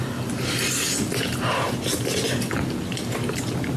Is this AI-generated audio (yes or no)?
no